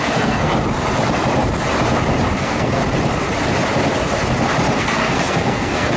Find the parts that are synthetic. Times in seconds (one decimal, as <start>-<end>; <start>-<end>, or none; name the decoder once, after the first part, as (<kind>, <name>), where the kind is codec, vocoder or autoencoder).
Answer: 0.0-0.5 (codec, SNAC); 2.4-2.8; 4.8-6.0